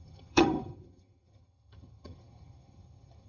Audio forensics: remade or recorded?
remade